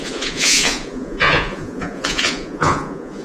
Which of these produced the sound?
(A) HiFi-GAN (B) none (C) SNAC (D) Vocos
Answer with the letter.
D